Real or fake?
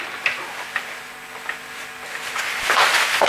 real